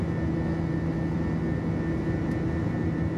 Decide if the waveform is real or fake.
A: real